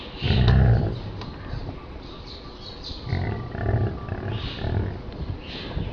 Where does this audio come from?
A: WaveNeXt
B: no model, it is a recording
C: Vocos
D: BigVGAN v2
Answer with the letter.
B